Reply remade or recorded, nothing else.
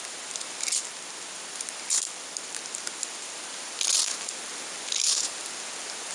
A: recorded